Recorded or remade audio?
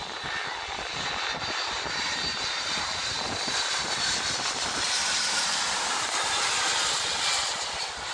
remade